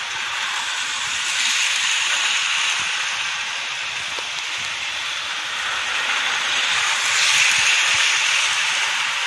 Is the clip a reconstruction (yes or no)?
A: no